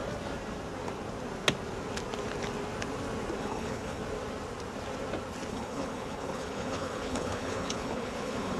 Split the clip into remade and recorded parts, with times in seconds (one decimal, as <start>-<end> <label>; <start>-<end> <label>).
0.0-3.4 recorded; 3.4-4.0 remade; 4.0-5.5 recorded; 5.5-8.6 remade